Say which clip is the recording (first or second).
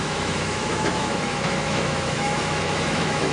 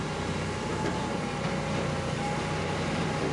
second